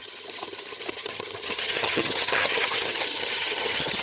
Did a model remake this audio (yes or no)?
yes